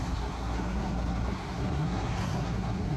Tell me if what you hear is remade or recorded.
remade